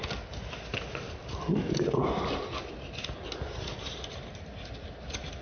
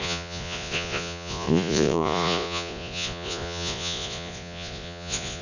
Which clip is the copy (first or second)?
second